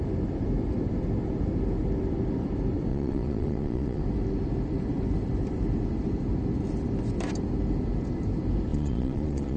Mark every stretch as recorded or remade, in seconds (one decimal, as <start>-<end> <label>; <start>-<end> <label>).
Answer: 0.0-2.9 recorded; 2.9-4.0 remade; 4.0-8.7 recorded; 8.7-9.6 remade